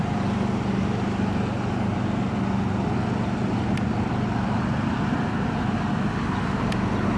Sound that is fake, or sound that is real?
real